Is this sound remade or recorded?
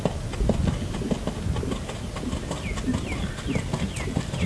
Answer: recorded